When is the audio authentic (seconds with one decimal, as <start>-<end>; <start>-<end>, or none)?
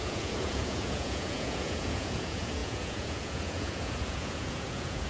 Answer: none